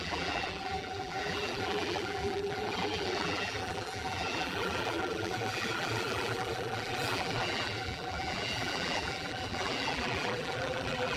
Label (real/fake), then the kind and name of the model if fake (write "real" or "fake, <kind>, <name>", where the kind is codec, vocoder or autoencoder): fake, vocoder, BigVGAN v2